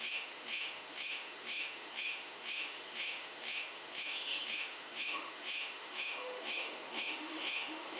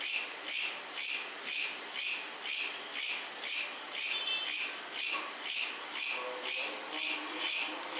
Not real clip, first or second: first